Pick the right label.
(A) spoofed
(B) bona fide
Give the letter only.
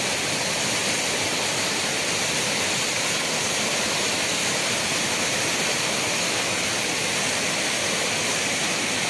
B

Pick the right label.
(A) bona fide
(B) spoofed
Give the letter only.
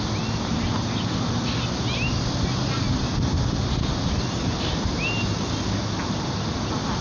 A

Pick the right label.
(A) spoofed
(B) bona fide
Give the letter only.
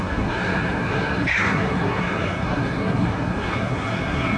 A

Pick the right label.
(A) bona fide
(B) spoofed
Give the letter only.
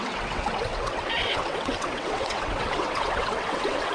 B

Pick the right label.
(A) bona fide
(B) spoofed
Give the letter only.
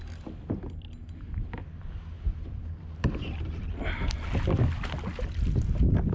A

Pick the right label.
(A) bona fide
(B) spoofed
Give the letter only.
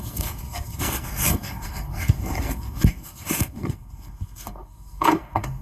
B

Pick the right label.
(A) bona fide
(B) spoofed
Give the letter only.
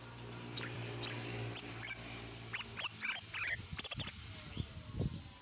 A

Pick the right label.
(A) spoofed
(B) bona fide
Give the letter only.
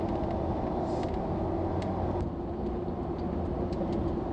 B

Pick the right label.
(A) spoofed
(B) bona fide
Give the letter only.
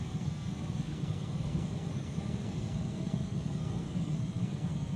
A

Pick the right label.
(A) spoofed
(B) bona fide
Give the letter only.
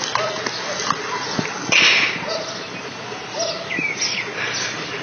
B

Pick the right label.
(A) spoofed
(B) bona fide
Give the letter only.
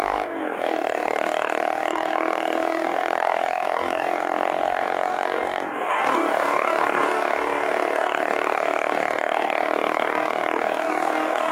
A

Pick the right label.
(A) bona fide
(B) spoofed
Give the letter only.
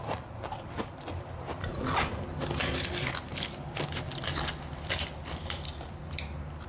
A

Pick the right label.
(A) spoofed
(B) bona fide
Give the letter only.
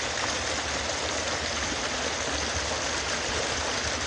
B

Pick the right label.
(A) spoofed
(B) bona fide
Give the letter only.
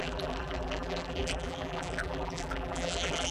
A